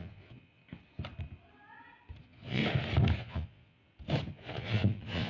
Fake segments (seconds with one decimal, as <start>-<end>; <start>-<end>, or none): 0.0-0.6; 2.2-2.6; 3.2-3.8; 4.3-5.3